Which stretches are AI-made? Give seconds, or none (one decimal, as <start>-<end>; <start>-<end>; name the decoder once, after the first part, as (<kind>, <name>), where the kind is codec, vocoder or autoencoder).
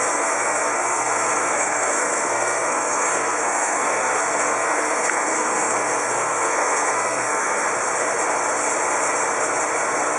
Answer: 0.0-7.7 (codec, SNAC)